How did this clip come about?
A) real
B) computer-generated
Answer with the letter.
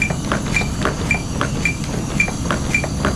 A